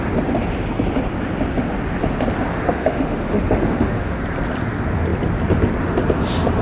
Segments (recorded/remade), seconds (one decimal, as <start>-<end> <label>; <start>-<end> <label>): 0.0-2.5 recorded; 2.5-4.2 remade; 4.2-6.6 recorded

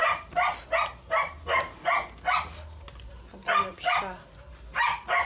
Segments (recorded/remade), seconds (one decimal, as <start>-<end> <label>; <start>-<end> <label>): 0.0-5.2 recorded

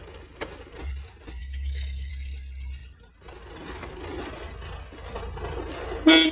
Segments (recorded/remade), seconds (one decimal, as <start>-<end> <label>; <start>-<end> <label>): 0.0-1.4 recorded; 1.4-2.1 remade; 2.1-6.3 recorded

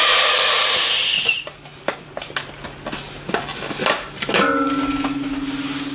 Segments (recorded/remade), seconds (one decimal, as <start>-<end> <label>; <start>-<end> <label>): 0.0-5.9 recorded

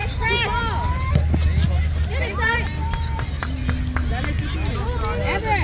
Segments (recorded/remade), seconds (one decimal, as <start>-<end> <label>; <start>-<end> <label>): 0.0-5.6 recorded